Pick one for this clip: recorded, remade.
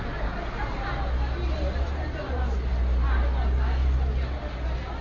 recorded